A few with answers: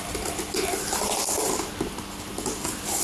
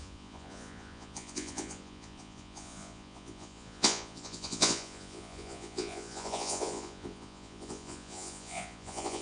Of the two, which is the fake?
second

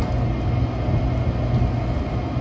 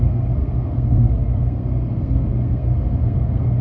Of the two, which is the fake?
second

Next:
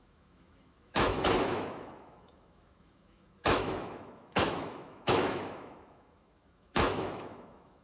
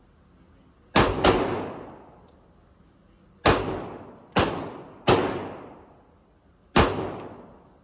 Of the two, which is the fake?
first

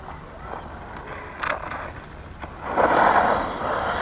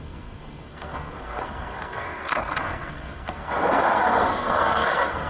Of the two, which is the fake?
second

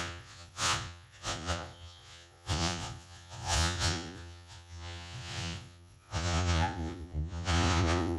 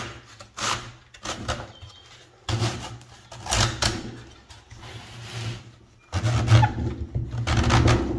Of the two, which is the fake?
first